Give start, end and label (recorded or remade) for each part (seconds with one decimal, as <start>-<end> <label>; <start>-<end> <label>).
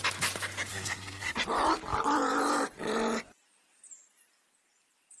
0.0-0.7 recorded; 0.7-1.4 remade; 1.4-5.2 recorded